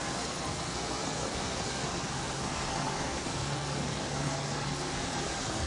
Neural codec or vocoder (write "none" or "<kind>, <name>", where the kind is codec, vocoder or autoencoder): codec, SNAC